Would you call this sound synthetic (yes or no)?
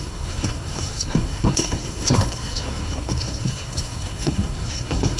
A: yes